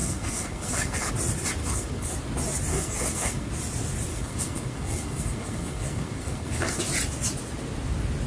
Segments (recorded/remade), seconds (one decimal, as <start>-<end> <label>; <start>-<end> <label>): 0.0-1.1 remade; 1.1-1.6 recorded; 1.6-2.1 remade; 2.1-2.7 recorded; 2.7-3.5 remade; 3.5-4.1 recorded; 4.1-6.8 remade; 6.8-8.3 recorded